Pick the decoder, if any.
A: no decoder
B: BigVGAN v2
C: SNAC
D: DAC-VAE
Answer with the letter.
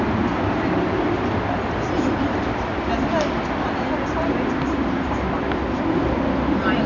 A